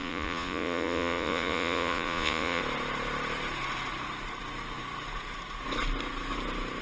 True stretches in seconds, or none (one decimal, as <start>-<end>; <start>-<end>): 2.6-6.8